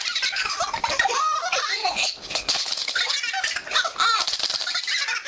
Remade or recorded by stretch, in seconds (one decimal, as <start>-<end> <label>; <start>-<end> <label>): 0.0-1.8 recorded; 1.8-3.0 remade; 3.0-5.3 recorded